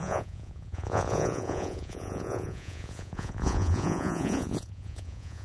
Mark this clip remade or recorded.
remade